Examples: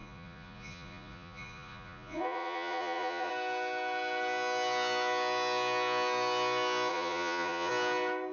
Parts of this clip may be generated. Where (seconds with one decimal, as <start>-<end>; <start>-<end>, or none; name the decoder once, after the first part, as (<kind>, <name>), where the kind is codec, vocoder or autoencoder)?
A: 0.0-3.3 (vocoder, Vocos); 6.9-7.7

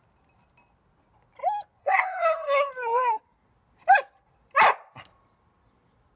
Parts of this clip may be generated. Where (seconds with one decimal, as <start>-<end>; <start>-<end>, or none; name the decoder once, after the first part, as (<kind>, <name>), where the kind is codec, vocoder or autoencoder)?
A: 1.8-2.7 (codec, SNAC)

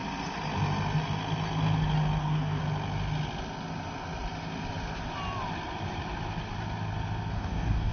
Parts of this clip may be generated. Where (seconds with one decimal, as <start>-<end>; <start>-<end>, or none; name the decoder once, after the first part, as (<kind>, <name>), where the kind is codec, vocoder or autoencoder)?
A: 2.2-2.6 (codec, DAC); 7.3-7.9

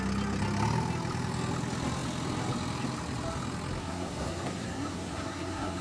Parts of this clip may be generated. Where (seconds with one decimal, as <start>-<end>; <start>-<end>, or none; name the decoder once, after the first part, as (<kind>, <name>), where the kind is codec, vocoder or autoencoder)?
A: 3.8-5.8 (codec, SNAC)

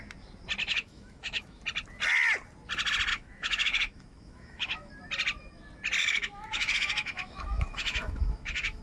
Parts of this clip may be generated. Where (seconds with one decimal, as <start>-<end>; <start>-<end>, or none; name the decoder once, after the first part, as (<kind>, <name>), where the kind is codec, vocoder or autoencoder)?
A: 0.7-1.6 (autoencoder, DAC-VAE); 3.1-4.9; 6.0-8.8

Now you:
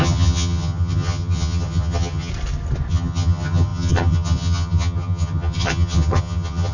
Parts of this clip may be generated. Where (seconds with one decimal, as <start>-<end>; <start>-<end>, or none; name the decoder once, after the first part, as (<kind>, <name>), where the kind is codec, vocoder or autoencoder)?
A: 0.0-2.3 (vocoder, HiFi-GAN); 2.9-6.7

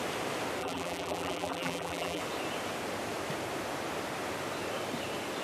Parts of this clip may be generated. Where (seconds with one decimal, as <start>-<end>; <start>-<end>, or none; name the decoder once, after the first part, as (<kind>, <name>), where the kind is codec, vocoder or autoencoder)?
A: 0.6-2.2 (vocoder, BigVGAN v2)